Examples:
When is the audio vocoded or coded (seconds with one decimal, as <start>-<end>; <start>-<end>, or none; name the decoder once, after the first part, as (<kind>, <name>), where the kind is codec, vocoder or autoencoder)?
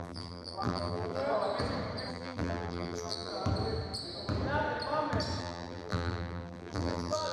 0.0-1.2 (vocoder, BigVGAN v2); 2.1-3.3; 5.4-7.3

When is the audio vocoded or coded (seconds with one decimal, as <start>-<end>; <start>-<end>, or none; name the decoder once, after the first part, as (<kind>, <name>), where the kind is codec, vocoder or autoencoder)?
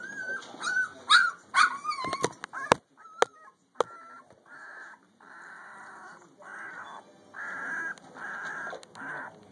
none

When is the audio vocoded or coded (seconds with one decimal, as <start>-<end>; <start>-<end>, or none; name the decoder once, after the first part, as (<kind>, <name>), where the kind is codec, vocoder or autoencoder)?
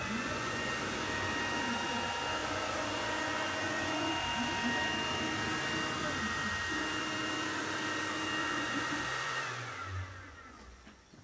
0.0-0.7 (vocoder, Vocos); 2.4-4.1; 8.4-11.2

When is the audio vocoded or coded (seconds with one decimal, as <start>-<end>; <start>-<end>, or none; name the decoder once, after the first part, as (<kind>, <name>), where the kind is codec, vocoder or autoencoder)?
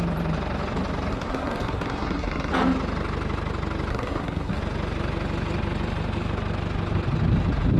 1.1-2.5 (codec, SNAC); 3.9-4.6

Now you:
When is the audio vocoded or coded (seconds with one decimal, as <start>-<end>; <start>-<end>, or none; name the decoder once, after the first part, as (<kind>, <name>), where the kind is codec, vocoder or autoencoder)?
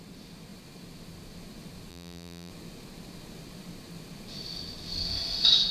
1.9-2.5 (vocoder, BigVGAN v2)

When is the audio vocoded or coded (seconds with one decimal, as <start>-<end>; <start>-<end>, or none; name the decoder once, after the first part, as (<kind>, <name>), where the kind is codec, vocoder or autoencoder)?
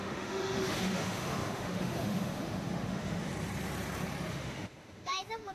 0.0-3.3 (autoencoder, DAC-VAE); 4.3-5.5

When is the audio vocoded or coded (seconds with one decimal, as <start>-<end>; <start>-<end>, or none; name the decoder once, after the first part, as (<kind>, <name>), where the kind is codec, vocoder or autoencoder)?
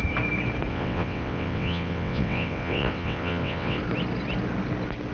0.7-3.8 (vocoder, WaveNeXt)